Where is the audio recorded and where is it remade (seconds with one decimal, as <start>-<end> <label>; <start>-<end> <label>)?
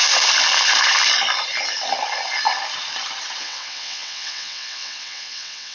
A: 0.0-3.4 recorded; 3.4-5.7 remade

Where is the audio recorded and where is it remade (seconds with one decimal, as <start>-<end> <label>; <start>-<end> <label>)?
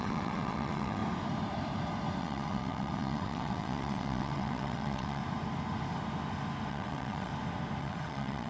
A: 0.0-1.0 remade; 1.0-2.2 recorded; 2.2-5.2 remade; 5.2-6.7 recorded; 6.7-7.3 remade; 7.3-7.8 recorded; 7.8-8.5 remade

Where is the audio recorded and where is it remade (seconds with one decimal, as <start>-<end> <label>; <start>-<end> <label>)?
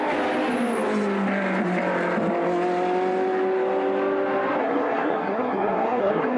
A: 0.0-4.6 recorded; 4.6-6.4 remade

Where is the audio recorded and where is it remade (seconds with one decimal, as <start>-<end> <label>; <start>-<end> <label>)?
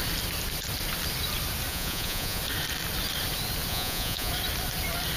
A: 0.0-1.7 recorded; 1.7-2.4 remade; 2.4-3.7 recorded; 3.7-4.3 remade; 4.3-5.2 recorded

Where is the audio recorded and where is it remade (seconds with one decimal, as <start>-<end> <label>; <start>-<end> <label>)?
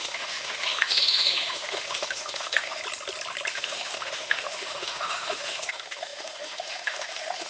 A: 0.0-2.8 remade; 2.8-3.5 recorded; 3.5-7.5 remade